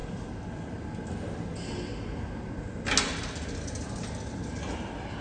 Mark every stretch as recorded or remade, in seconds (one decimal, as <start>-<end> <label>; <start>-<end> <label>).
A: 0.0-5.2 recorded